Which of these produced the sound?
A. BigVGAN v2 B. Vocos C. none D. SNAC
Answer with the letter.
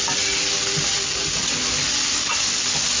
C